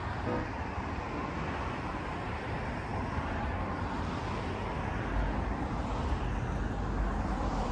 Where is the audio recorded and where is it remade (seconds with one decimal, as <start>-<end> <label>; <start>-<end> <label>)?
0.0-7.7 recorded